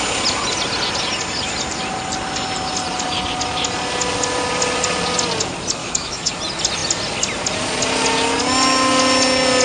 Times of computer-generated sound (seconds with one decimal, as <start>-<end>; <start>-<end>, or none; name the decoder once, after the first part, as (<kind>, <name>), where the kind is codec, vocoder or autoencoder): 5.8-6.3 (autoencoder, DAC-VAE)